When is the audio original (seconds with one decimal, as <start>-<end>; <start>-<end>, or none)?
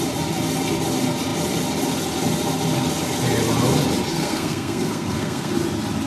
0.0-4.1; 5.5-6.1